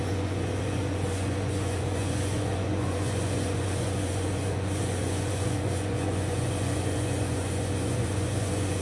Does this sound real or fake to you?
fake